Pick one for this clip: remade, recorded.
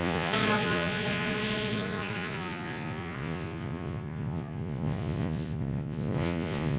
remade